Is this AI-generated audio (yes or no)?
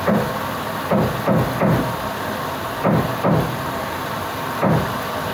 no